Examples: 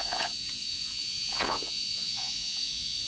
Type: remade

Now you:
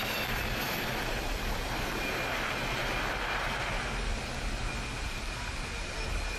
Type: recorded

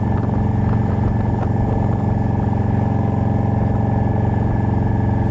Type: recorded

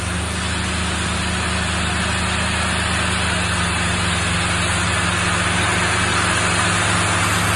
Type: recorded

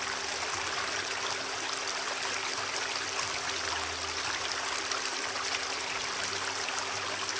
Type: recorded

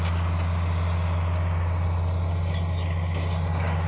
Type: recorded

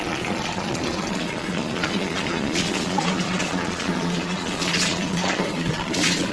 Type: remade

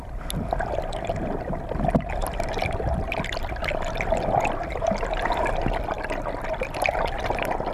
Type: recorded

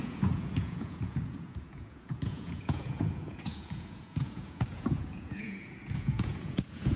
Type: remade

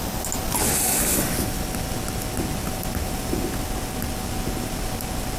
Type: recorded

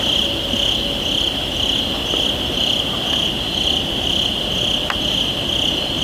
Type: recorded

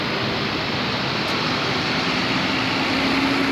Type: recorded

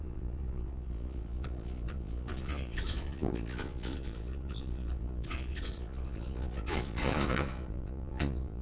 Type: remade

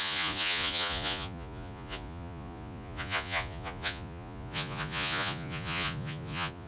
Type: remade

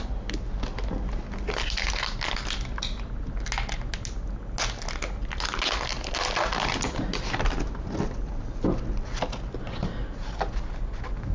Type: recorded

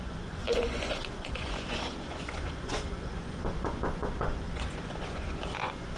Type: remade